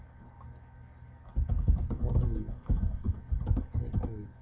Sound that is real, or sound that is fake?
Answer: fake